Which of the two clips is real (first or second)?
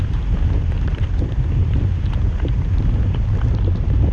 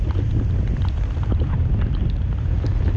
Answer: second